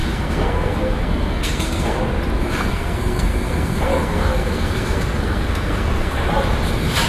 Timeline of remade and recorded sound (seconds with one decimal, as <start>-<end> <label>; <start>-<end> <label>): 0.0-2.0 remade; 2.0-2.7 recorded; 2.7-6.3 remade; 6.3-7.1 recorded